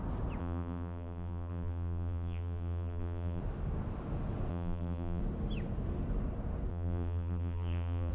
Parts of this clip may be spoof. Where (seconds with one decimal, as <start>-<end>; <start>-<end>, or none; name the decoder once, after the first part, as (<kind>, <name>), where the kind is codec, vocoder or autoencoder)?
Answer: 0.4-3.4 (vocoder, BigVGAN v2); 4.5-5.2; 6.7-8.1